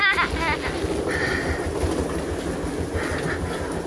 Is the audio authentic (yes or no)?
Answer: yes